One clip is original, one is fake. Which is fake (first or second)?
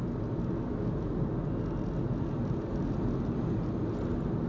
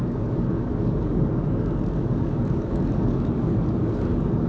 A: second